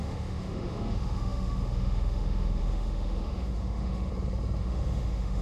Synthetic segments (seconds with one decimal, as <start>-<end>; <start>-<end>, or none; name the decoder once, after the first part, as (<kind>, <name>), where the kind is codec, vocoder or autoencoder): 0.0-4.1 (autoencoder, DAC-VAE); 4.6-5.4